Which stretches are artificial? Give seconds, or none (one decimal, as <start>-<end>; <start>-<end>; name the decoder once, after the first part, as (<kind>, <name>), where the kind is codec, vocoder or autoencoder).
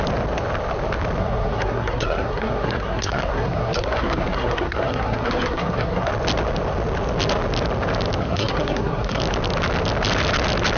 1.2-6.1 (codec, SNAC); 8.2-9.2